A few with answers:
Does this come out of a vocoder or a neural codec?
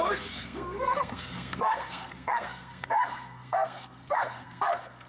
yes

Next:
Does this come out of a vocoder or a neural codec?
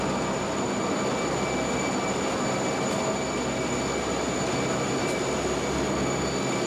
no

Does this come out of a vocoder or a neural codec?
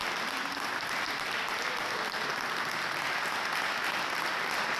no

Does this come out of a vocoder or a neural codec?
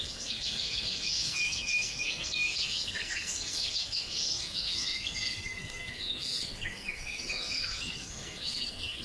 yes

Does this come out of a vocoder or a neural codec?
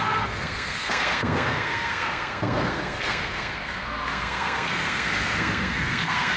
yes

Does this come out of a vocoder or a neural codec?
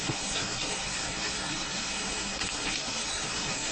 yes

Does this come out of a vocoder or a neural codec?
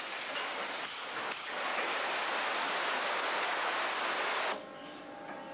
no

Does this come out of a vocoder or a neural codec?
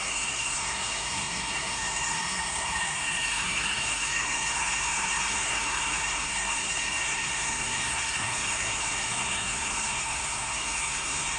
yes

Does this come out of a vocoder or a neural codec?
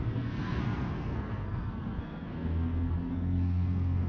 yes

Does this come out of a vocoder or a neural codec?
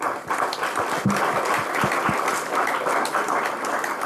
no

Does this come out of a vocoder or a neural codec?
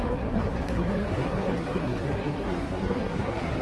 yes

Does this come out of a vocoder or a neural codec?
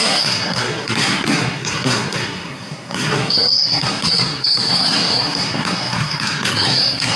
yes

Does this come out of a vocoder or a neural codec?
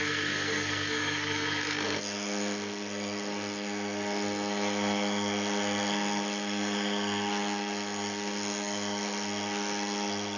yes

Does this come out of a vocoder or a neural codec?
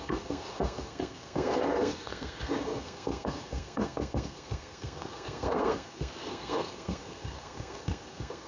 yes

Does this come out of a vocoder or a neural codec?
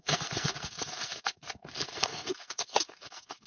yes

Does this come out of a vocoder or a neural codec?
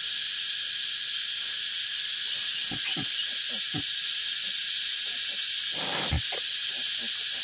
no